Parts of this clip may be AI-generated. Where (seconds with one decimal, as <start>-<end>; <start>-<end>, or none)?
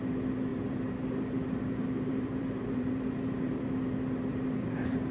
0.5-3.6; 4.3-5.1